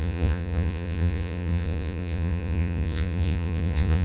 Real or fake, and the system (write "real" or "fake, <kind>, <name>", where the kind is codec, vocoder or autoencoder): fake, vocoder, Vocos